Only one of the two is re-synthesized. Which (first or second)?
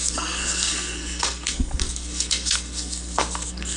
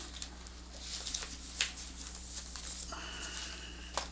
first